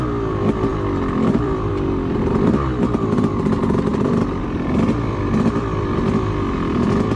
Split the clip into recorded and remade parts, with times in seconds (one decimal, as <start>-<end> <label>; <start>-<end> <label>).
0.0-0.7 recorded; 0.7-1.7 remade; 1.7-3.9 recorded; 3.9-4.4 remade; 4.4-7.2 recorded